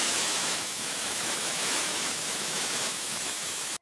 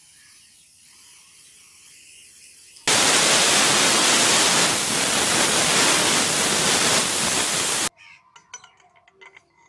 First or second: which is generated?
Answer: first